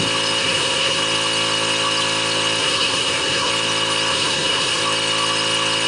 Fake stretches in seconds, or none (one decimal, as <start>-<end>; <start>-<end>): 0.4-1.0; 2.6-3.5; 4.1-4.8